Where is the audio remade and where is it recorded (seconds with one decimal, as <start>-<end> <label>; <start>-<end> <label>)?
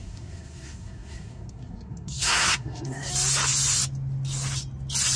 0.0-3.1 remade; 3.1-5.2 recorded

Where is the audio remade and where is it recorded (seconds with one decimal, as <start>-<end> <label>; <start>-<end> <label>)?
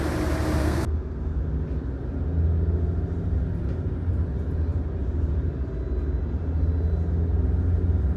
0.0-0.6 recorded; 0.6-1.4 remade; 1.4-8.2 recorded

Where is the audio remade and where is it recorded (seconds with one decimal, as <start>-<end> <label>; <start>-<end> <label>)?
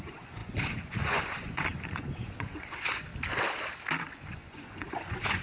0.0-3.1 remade; 3.1-4.0 recorded; 4.0-5.4 remade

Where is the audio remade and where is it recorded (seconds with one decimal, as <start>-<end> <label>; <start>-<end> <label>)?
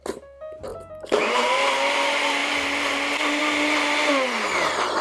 0.0-5.0 recorded